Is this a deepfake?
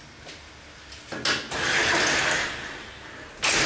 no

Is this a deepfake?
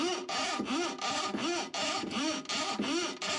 no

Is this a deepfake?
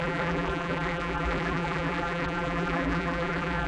yes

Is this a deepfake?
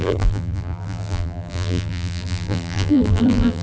yes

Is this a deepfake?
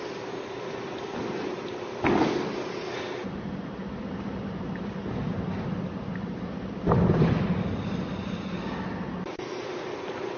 no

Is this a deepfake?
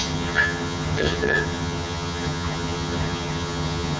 yes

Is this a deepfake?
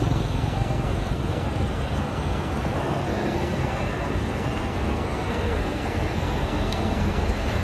yes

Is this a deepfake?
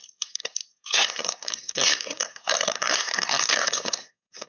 yes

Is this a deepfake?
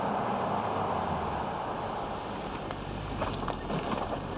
no